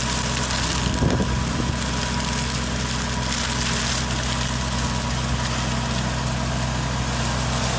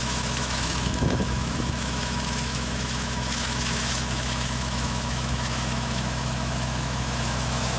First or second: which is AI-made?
second